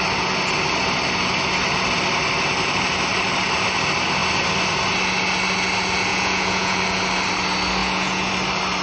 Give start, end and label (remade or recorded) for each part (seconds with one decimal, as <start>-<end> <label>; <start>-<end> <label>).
0.0-6.1 recorded; 6.1-6.8 remade; 6.8-7.8 recorded; 7.8-8.3 remade; 8.3-8.8 recorded